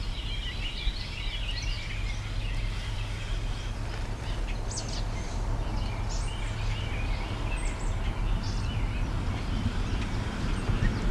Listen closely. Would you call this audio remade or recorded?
recorded